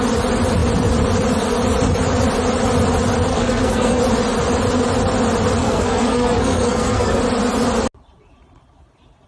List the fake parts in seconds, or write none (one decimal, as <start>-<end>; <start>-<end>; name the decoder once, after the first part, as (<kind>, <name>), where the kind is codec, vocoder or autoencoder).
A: 3.3-4.0 (codec, SNAC); 5.6-7.2